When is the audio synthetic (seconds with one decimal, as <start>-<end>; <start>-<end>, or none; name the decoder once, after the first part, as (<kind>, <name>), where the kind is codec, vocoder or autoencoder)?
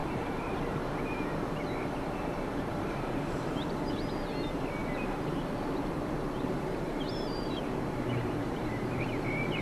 0.0-0.8 (vocoder, BigVGAN v2); 1.8-3.9; 4.8-9.0